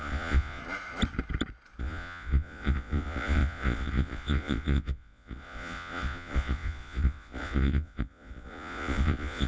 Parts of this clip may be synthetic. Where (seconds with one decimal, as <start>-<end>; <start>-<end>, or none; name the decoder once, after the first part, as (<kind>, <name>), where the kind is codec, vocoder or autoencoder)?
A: 0.0-0.6 (vocoder, Vocos); 1.8-9.5